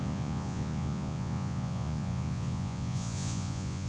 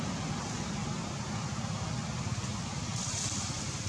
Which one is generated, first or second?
first